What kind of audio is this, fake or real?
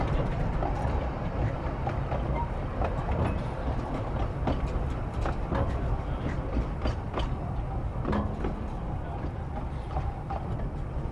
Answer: fake